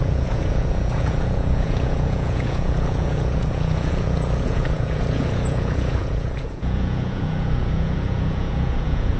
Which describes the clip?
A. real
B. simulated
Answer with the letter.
B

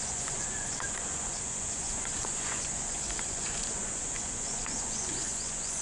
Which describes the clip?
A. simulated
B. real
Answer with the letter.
A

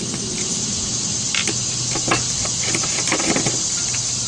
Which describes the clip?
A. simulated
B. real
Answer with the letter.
B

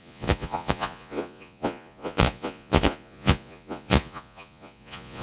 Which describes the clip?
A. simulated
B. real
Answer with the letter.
A